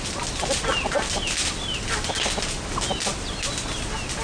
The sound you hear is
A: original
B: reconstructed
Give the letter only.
A